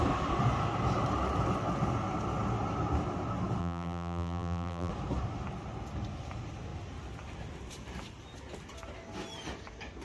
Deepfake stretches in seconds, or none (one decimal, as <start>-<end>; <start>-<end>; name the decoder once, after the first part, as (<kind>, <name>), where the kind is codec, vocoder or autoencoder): 3.6-4.9 (vocoder, BigVGAN v2)